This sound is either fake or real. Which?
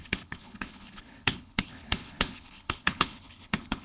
fake